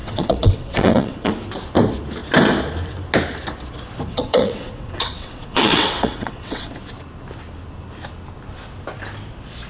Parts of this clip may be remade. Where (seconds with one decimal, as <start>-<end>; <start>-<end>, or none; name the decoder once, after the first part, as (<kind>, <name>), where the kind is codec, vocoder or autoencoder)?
0.0-1.3 (vocoder, WaveNeXt); 4.1-6.7